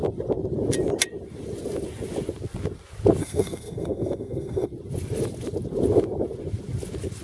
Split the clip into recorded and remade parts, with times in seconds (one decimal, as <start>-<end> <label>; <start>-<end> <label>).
0.0-3.2 recorded; 3.2-4.7 remade; 4.7-7.2 recorded